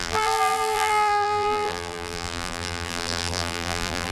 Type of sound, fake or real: fake